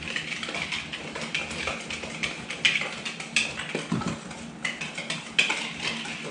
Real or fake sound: real